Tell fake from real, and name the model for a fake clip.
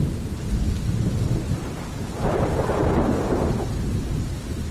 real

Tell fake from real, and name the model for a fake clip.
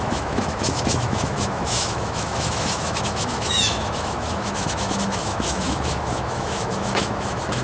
fake, autoencoder, DAC-VAE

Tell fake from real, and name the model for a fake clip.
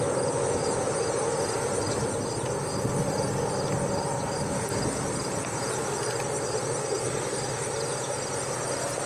real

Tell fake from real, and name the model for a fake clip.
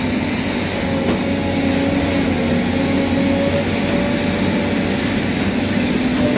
real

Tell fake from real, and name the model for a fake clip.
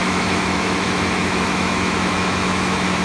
fake, autoencoder, DAC-VAE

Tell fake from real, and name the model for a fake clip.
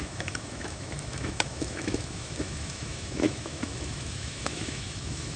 fake, autoencoder, DAC-VAE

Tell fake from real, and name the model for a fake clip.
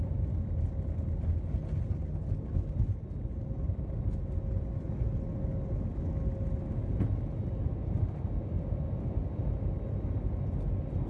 real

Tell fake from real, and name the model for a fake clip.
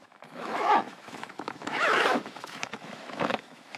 fake, autoencoder, DAC-VAE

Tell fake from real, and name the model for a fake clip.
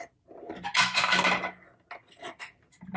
real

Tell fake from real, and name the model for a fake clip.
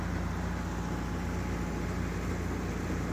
real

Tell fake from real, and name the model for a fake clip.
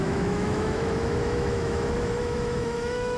fake, autoencoder, DAC-VAE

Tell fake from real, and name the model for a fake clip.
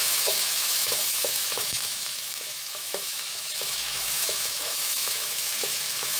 fake, autoencoder, DAC-VAE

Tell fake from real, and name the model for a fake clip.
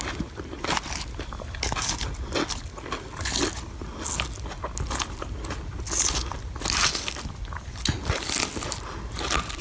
real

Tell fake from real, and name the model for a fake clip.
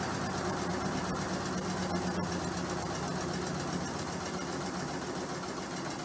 real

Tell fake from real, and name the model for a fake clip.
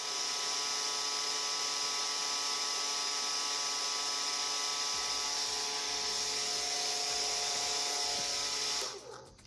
real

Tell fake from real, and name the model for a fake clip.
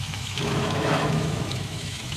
fake, autoencoder, DAC-VAE